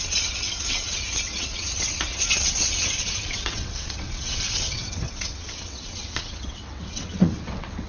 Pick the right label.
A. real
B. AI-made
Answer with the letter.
B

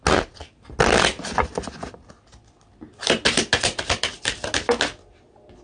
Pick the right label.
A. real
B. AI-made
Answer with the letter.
A